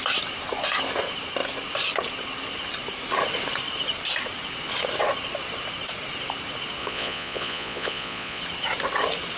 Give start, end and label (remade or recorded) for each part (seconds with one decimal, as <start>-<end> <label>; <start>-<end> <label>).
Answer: 0.0-6.8 recorded; 6.8-8.4 remade; 8.4-9.4 recorded